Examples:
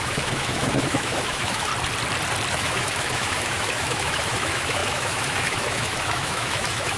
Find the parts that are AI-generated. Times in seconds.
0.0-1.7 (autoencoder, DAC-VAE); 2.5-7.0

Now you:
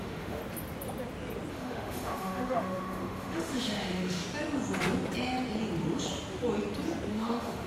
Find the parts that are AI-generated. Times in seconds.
0.0-0.4 (autoencoder, DAC-VAE); 1.5-4.2; 7.1-7.7